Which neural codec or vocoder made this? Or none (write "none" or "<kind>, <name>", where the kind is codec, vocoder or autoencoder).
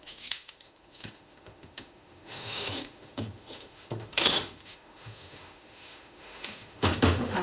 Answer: autoencoder, DAC-VAE